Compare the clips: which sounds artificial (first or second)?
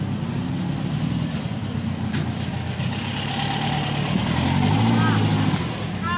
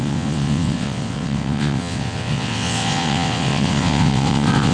second